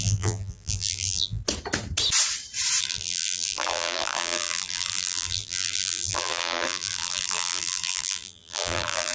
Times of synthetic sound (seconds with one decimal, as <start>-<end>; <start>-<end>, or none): 0.0-1.4; 2.8-9.1